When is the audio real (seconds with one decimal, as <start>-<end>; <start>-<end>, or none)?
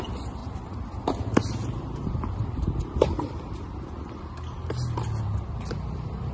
0.0-6.3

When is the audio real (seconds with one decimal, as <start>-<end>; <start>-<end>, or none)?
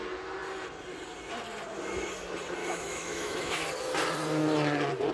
0.0-2.6; 3.7-5.1